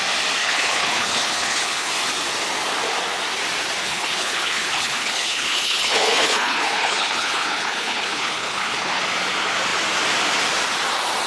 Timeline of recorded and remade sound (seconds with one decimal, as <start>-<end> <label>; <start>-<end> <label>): 0.0-0.4 recorded; 0.4-1.9 remade; 1.9-3.8 recorded; 3.8-9.0 remade; 9.0-11.3 recorded